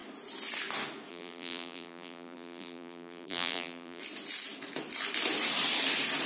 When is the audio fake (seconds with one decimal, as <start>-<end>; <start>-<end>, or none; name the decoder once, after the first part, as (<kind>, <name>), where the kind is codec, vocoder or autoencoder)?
1.1-4.0 (vocoder, BigVGAN v2)